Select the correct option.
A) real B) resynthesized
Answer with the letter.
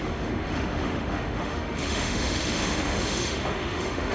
B